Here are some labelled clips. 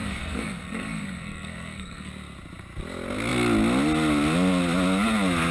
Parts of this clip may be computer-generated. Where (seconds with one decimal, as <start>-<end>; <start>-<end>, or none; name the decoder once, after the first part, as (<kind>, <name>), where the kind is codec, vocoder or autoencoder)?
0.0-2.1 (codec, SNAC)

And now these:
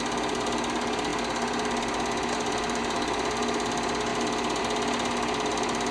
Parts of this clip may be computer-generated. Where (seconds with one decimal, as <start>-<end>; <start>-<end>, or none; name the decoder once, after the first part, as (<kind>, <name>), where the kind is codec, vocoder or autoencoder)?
none

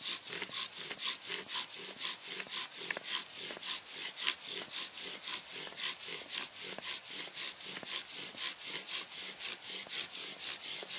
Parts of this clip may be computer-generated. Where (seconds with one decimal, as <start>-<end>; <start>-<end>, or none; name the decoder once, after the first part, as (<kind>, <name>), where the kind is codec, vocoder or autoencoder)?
none

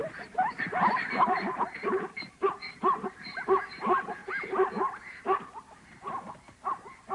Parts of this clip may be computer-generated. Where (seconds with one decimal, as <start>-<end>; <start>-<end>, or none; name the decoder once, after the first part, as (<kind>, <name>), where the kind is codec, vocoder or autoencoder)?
0.0-4.2 (vocoder, BigVGAN v2); 6.3-7.1

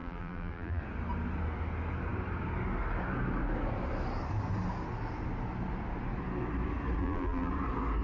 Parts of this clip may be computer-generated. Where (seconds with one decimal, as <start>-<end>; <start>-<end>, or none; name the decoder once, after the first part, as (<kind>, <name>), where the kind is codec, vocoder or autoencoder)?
0.0-0.8 (vocoder, BigVGAN v2); 7.0-7.5

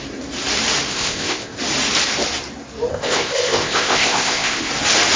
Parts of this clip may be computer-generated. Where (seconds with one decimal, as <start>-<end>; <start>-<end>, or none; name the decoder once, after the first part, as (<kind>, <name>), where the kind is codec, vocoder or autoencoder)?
0.9-1.6 (codec, ZipCodec); 2.9-4.7